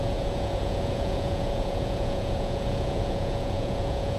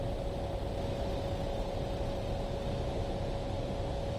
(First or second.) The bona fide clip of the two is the second